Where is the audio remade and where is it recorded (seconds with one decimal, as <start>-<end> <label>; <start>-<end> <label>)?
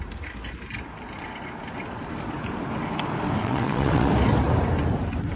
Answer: 0.0-3.4 recorded; 3.4-4.1 remade; 4.1-5.4 recorded